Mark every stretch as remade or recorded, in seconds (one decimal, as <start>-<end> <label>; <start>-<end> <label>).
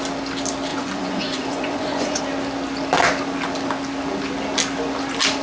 0.0-0.7 recorded; 0.7-2.2 remade; 2.2-5.4 recorded